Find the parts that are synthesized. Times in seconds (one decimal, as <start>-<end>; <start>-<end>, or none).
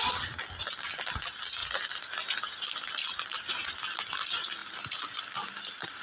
1.6-3.5; 4.6-5.6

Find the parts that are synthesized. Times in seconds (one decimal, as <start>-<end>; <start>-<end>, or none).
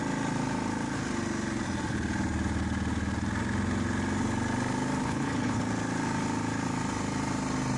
5.0-5.6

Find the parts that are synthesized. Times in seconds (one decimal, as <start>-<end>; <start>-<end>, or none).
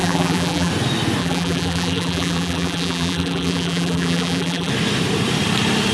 0.0-0.7; 1.2-4.7